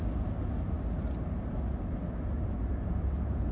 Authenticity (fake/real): real